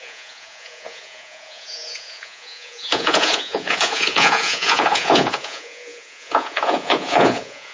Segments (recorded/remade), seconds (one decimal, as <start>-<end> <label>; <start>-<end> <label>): 0.0-7.7 remade